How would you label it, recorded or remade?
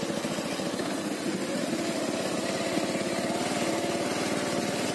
recorded